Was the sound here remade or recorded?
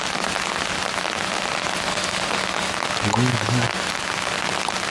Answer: recorded